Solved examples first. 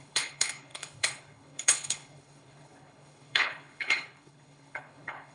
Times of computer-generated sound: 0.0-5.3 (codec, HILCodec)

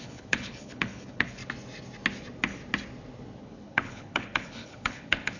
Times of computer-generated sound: 0.0-1.4 (codec, HILCodec); 3.4-5.4

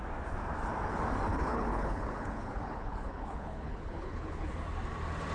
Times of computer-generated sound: 1.3-4.5 (codec, HILCodec)

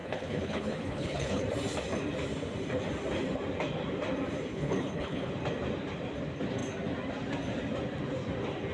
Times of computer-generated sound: 0.0-1.4 (codec, HILCodec); 4.5-5.3

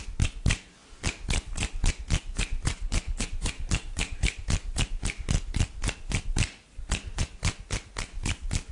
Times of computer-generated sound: 2.8-3.3 (codec, HILCodec)